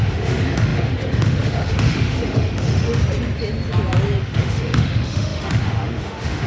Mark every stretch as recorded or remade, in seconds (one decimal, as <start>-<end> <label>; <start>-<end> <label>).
0.0-3.0 remade; 3.0-4.2 recorded; 4.2-6.5 remade